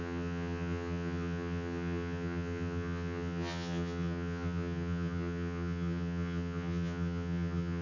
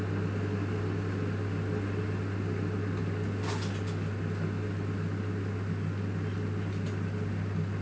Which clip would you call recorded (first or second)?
second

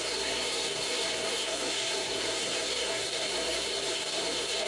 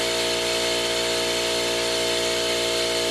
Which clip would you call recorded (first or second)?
second